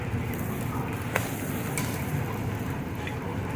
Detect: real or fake fake